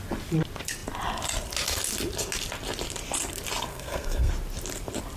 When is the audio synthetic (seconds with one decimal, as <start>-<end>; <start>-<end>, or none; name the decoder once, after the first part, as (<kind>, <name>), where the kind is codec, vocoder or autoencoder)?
3.7-4.3 (codec, SNAC)